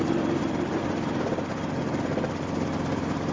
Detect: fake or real real